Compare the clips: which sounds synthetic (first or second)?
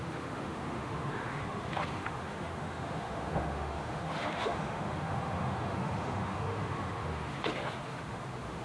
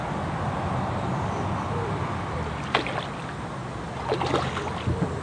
first